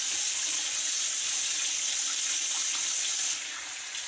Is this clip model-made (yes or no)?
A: no